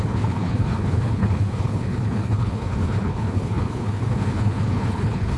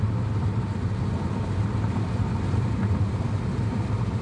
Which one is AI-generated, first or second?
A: first